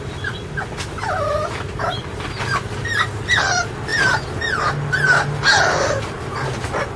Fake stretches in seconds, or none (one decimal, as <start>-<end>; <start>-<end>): none